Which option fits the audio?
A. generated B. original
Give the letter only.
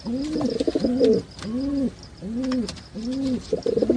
B